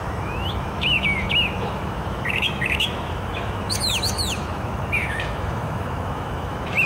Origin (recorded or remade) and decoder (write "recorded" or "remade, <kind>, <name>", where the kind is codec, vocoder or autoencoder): remade, autoencoder, DAC-VAE